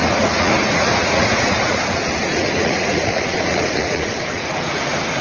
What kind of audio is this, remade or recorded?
remade